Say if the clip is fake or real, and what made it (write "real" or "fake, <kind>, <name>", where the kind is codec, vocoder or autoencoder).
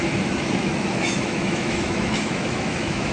fake, autoencoder, DAC-VAE